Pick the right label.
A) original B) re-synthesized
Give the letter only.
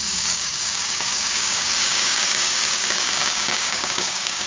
B